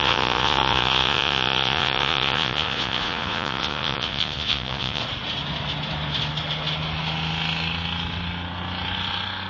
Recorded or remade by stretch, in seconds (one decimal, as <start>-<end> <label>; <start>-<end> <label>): 0.0-5.0 remade; 5.0-9.5 recorded